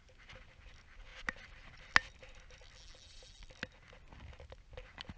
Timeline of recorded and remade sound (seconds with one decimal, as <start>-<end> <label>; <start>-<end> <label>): 0.0-5.2 recorded